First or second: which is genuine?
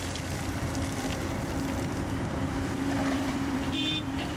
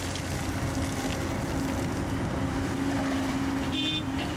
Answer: second